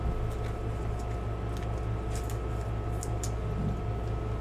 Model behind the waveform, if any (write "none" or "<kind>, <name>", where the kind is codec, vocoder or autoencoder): none